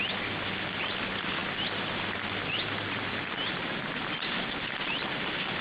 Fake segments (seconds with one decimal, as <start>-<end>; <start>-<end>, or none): 1.4-3.7